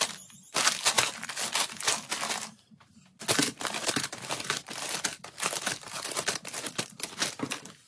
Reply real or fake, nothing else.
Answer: real